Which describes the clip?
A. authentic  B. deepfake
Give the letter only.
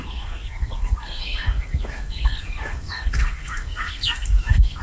B